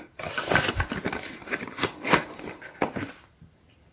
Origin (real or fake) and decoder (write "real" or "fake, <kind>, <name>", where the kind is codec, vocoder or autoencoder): fake, vocoder, BigVGAN v2